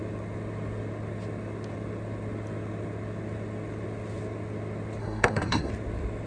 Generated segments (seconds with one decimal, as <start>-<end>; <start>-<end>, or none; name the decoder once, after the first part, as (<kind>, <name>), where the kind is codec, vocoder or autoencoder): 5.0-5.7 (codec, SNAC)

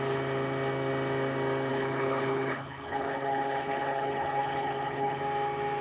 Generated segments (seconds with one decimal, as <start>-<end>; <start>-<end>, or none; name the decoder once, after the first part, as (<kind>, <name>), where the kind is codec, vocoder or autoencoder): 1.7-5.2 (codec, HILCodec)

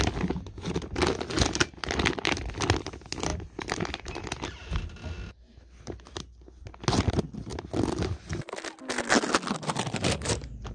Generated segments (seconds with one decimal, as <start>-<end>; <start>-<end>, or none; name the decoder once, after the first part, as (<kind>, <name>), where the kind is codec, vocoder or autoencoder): none